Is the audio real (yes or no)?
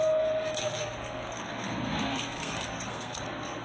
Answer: no